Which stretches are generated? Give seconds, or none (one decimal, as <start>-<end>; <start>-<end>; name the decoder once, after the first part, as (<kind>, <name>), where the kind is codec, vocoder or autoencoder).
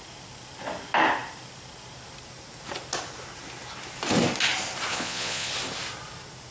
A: 4.9-5.5 (vocoder, Vocos)